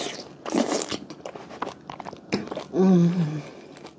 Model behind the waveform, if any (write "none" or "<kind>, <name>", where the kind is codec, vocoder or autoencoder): none